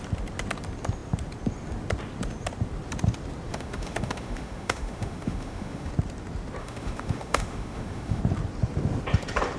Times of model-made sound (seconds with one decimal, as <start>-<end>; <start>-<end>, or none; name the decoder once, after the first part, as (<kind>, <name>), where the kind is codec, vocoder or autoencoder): 3.5-5.9 (autoencoder, DAC-VAE); 6.6-8.2